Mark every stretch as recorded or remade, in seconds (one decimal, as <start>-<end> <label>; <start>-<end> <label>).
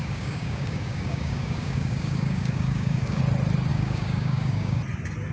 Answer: 0.0-3.2 remade; 3.2-3.7 recorded; 3.7-4.8 remade; 4.8-5.3 recorded